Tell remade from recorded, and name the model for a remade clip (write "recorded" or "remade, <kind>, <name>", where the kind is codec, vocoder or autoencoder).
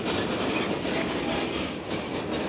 recorded